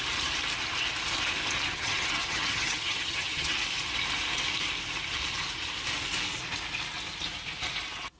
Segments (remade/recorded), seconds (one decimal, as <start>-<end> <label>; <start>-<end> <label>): 0.0-1.7 recorded; 1.7-3.6 remade; 3.6-8.2 recorded